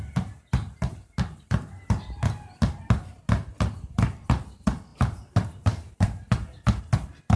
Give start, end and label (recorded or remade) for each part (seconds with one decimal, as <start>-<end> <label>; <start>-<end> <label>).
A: 0.0-4.9 recorded; 4.9-6.8 remade; 6.8-7.4 recorded